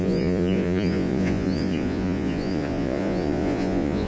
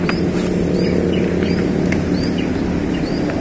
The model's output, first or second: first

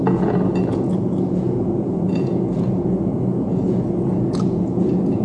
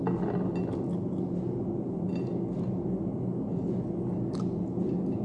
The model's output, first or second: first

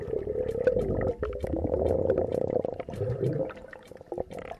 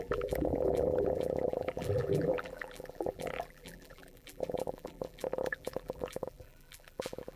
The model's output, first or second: second